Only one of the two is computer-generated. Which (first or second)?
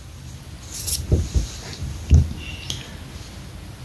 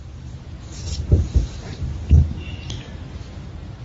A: second